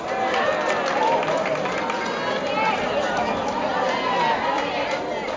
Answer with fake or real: real